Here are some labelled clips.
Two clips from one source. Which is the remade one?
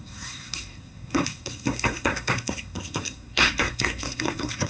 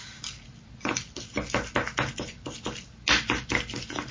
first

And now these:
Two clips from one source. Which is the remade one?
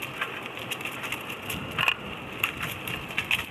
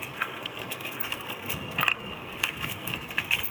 second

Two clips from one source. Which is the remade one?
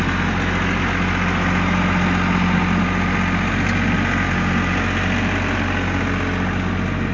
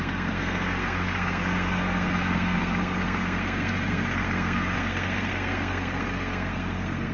second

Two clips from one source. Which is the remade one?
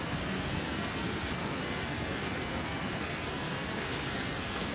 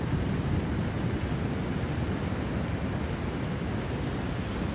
first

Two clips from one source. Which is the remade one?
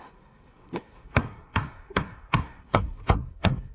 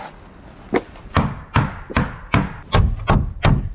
first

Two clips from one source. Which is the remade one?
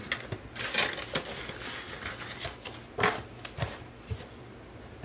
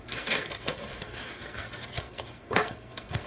second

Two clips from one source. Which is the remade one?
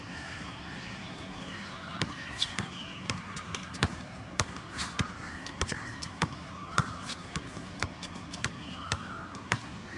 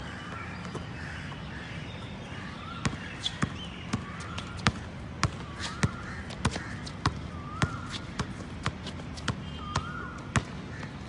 first